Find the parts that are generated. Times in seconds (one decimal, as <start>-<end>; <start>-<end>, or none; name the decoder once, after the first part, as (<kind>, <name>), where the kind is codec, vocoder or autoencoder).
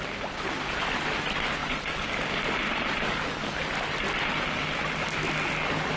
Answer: 1.6-2.2 (vocoder, BigVGAN v2)